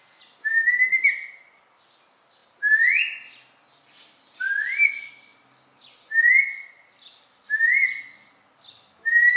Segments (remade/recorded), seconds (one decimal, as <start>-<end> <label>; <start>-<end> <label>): 0.0-9.4 recorded